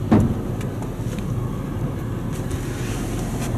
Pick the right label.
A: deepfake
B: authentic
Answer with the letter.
B